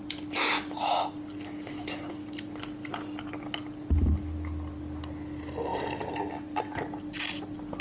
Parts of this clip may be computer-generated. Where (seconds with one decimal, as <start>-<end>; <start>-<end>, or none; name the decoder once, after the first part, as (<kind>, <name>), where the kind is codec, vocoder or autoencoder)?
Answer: 5.7-6.6 (vocoder, BigVGAN v2)